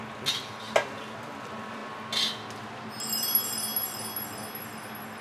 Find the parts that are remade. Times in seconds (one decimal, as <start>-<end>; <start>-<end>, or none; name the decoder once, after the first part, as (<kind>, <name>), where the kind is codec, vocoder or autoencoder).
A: none